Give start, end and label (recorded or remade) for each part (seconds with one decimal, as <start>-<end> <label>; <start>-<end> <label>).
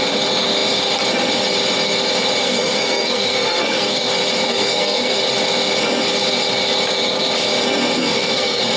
0.0-2.4 recorded; 2.4-4.1 remade; 4.1-4.5 recorded; 4.5-5.2 remade; 5.2-8.0 recorded; 8.0-8.8 remade